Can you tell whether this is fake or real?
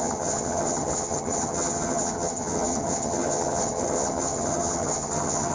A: fake